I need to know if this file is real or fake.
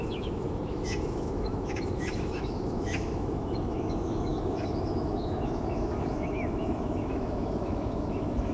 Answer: fake